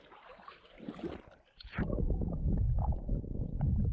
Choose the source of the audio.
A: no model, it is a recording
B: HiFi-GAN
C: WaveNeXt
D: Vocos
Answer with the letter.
A